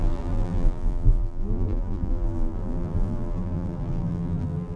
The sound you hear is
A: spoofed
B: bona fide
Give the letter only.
A